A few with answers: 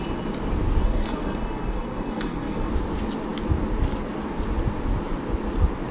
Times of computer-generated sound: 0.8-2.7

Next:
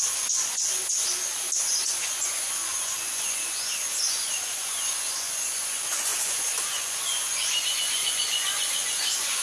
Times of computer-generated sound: 0.0-1.0; 1.6-9.4

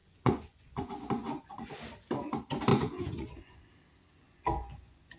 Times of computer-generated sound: 0.0-1.7; 2.7-3.7; 4.2-5.2

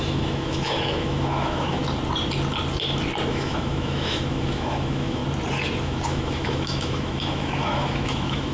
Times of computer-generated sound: 0.0-1.8; 3.3-5.2; 5.8-8.5

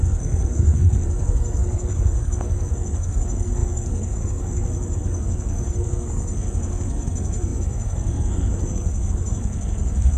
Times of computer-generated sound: 0.0-10.2

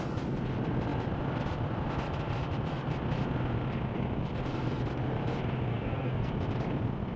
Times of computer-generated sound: 5.7-6.3

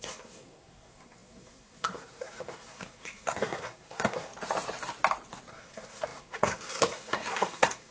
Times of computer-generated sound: 0.0-4.3; 5.5-7.9